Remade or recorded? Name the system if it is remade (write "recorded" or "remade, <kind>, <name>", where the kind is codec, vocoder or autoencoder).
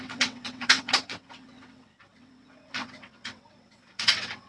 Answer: remade, vocoder, WaveNeXt